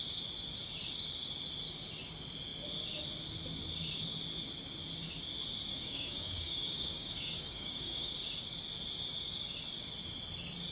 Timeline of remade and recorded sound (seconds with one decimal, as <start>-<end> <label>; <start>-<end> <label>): 0.0-5.7 recorded; 5.7-8.1 remade; 8.1-10.7 recorded